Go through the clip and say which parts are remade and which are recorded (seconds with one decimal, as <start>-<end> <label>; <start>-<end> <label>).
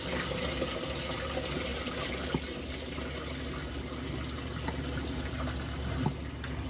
0.0-6.7 recorded